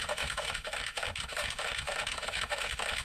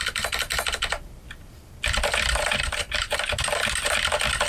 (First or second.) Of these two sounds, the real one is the second